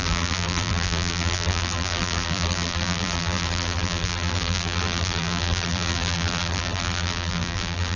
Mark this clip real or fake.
fake